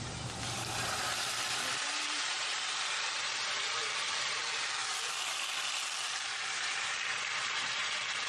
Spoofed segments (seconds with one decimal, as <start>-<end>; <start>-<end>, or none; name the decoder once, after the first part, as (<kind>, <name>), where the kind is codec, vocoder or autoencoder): 0.0-4.4 (vocoder, BigVGAN v2); 6.2-8.3